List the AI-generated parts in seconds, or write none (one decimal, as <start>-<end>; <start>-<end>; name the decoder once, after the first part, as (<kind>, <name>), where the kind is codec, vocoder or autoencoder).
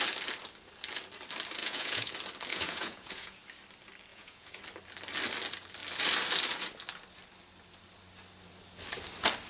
1.6-2.1 (vocoder, Vocos); 2.5-3.4; 4.1-4.6